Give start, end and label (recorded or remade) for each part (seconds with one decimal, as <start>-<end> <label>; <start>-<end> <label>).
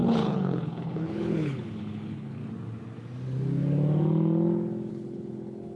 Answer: 0.0-2.4 remade; 2.4-4.9 recorded; 4.9-5.8 remade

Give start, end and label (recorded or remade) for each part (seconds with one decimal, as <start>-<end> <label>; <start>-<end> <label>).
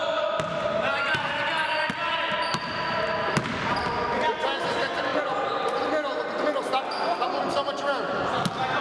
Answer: 0.0-8.8 recorded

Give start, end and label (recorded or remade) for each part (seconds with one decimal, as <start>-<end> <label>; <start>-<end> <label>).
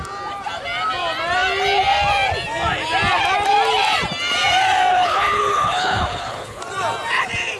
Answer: 0.0-4.9 recorded; 4.9-6.6 remade; 6.6-7.6 recorded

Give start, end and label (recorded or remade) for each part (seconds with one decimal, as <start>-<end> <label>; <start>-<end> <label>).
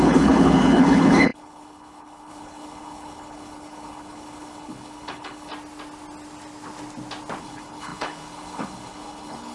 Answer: 0.0-5.5 remade; 5.5-7.4 recorded; 7.4-9.5 remade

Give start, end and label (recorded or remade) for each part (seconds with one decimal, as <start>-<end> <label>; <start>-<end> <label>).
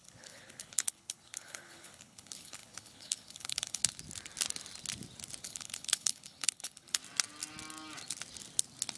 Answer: 0.0-3.8 remade; 3.8-5.4 recorded; 5.4-7.0 remade; 7.0-9.0 recorded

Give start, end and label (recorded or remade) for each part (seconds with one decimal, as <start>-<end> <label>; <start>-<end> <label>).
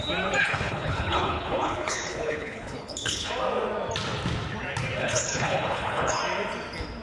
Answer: 0.0-0.4 recorded; 0.4-3.3 remade; 3.3-5.0 recorded; 5.0-6.2 remade; 6.2-7.0 recorded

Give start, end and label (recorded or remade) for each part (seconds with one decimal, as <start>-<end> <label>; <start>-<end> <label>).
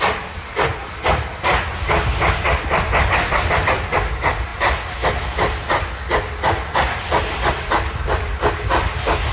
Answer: 0.0-9.3 recorded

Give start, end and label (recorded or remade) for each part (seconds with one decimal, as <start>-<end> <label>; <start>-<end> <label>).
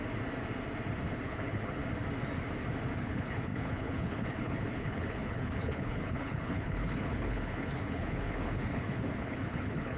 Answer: 0.0-1.1 recorded; 1.1-1.8 remade; 1.8-3.0 recorded; 3.0-10.0 remade